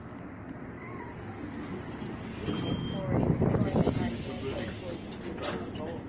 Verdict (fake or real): real